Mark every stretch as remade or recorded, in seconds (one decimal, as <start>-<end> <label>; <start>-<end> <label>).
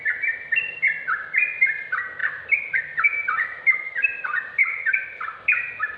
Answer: 0.0-6.0 recorded